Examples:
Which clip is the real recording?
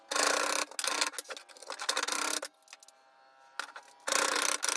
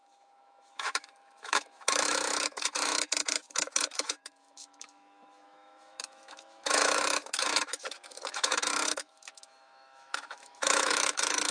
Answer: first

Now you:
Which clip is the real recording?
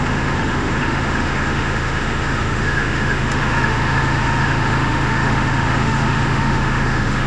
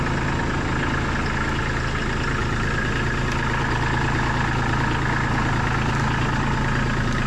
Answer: second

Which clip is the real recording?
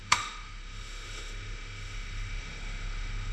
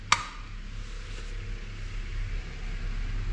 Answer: second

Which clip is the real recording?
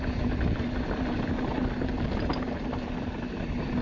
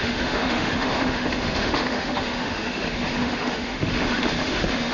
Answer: first